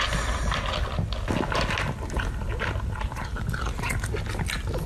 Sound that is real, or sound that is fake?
real